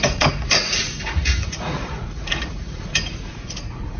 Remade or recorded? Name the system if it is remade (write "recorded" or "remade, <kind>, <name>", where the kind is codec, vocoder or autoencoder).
remade, vocoder, Vocos